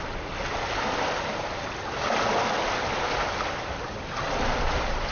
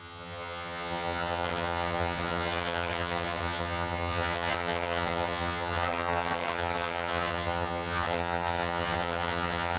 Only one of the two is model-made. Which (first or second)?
second